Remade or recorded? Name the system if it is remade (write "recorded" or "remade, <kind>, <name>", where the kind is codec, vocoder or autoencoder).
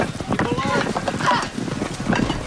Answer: recorded